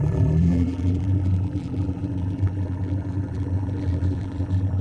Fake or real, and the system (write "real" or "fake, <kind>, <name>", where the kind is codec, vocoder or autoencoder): fake, vocoder, BigVGAN v2